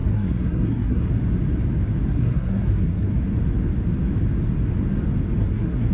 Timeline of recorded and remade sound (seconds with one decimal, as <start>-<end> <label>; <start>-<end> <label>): 0.0-1.1 remade; 1.1-2.1 recorded; 2.1-3.2 remade; 3.2-5.4 recorded; 5.4-5.9 remade